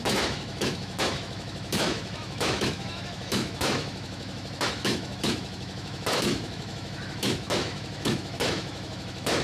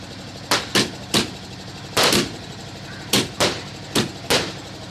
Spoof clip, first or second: first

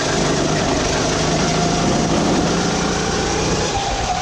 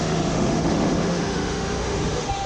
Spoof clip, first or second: second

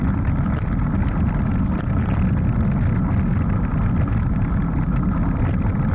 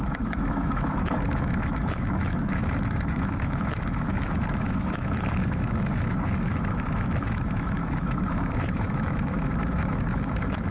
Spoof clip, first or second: second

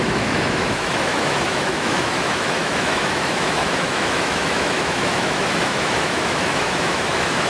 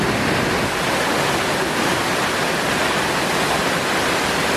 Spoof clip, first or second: first